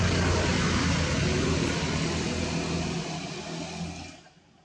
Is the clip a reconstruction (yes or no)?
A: no